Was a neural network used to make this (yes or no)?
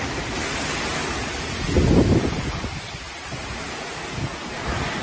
no